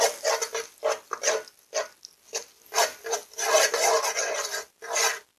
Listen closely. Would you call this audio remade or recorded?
recorded